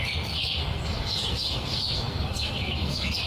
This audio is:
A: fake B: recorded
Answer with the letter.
A